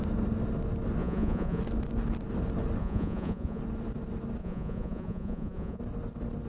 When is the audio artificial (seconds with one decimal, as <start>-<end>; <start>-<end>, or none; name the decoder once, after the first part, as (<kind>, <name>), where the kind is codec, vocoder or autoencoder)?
1.0-1.6 (vocoder, Vocos); 2.8-3.6; 4.4-5.8